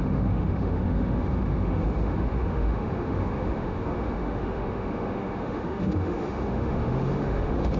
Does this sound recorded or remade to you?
remade